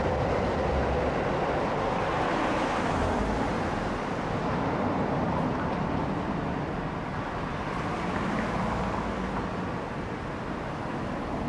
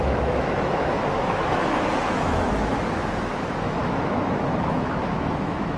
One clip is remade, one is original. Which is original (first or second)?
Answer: first